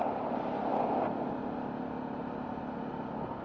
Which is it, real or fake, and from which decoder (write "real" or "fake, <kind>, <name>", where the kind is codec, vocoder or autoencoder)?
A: real